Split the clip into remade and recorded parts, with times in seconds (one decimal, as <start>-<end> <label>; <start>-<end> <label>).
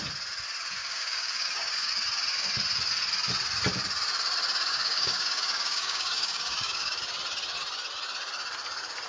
0.0-0.8 recorded; 0.8-1.9 remade; 1.9-4.7 recorded; 4.7-7.0 remade; 7.0-9.1 recorded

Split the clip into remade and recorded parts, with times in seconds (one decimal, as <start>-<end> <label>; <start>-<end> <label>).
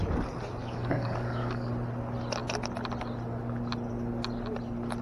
0.0-0.6 recorded; 0.6-1.7 remade; 1.7-5.0 recorded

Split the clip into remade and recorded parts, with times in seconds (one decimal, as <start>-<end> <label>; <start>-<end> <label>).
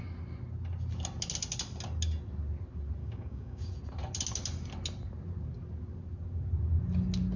0.0-3.0 recorded; 3.0-3.7 remade; 3.7-7.4 recorded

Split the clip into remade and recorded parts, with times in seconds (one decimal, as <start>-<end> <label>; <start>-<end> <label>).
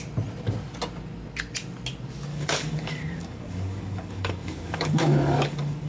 0.0-2.3 recorded; 2.3-5.9 remade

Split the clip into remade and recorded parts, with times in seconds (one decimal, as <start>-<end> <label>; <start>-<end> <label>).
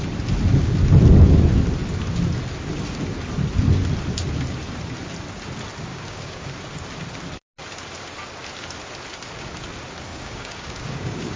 0.0-5.9 recorded; 5.9-6.5 remade; 6.5-10.1 recorded; 10.1-11.4 remade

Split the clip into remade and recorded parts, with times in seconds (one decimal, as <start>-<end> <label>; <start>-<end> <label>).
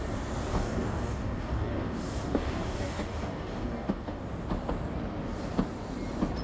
0.0-0.5 recorded; 0.5-4.2 remade; 4.2-6.4 recorded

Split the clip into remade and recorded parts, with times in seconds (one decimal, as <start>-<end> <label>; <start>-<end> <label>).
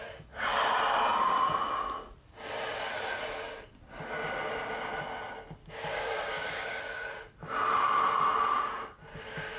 0.0-5.6 recorded; 5.6-6.8 remade; 6.8-9.1 recorded; 9.1-9.6 remade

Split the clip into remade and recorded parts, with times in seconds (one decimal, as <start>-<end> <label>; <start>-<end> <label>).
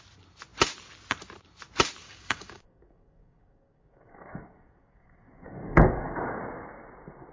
0.0-2.0 recorded; 2.0-6.4 remade; 6.4-7.3 recorded